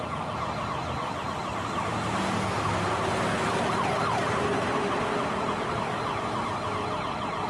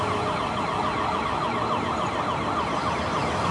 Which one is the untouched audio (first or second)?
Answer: first